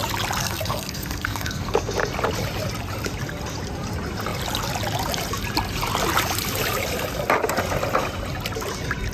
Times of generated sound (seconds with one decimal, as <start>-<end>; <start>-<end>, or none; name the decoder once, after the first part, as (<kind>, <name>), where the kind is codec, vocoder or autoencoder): 0.4-1.7 (codec, SNAC)